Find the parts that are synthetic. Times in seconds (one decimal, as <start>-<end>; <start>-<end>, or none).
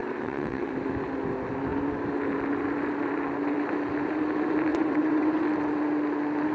0.0-0.7; 4.7-5.4